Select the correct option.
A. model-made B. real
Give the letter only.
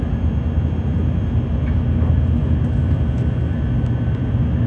B